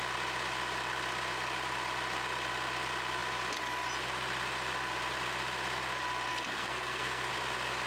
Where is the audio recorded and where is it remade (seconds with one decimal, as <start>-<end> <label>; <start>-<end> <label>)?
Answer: 0.0-6.3 recorded; 6.3-7.3 remade; 7.3-7.9 recorded